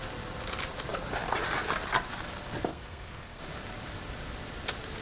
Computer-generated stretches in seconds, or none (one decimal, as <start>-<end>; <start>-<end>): 2.7-3.4